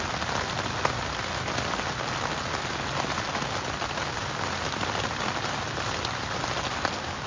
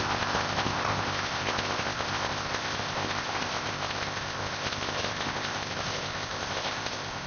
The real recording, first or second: first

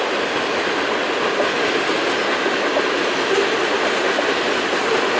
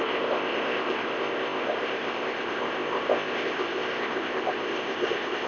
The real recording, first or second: first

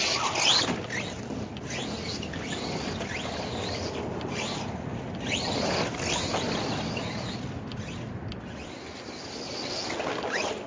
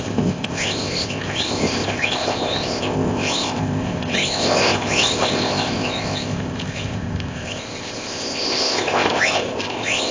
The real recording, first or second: first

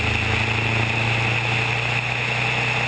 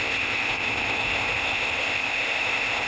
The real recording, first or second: first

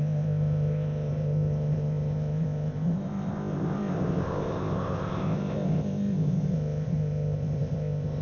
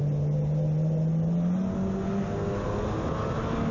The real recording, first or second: second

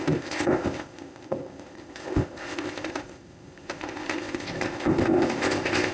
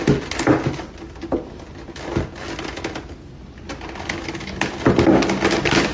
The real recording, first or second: second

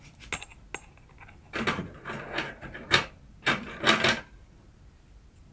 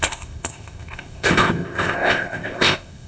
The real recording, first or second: first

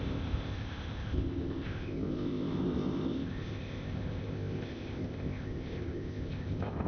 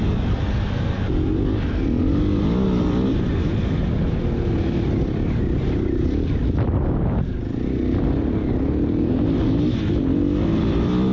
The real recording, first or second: second